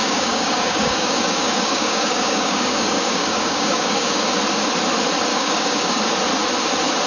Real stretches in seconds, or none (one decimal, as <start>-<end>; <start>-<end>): 4.3-5.3; 6.0-7.1

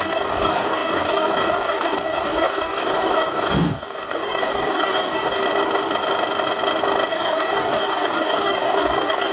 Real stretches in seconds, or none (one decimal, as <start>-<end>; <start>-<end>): 5.4-7.1

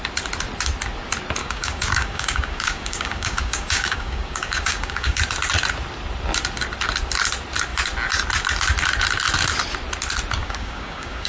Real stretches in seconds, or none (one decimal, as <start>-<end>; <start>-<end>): 0.0-1.4; 5.2-10.4